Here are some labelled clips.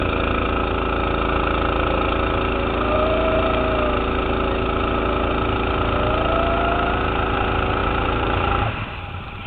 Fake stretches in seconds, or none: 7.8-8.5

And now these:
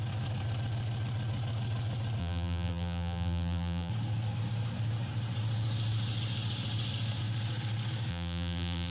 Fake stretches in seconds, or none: 2.2-3.9; 8.1-8.9

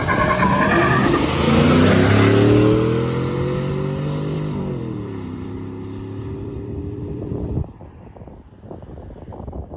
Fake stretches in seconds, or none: 4.3-7.6

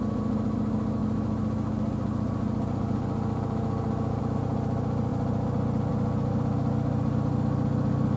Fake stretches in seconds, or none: none

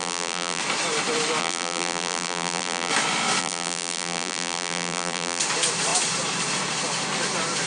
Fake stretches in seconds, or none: 0.0-0.6; 1.4-2.9; 3.4-5.4

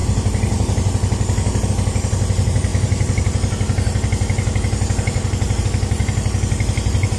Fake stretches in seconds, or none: none

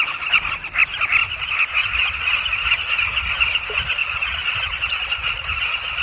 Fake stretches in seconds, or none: 4.0-4.6

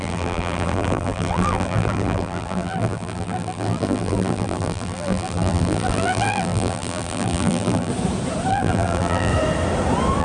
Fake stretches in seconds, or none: 0.0-7.9; 8.5-9.3